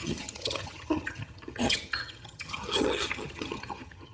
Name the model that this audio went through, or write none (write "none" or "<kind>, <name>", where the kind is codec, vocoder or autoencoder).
vocoder, HiFi-GAN